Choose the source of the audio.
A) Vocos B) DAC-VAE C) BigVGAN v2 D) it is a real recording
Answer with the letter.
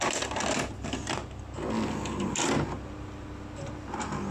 D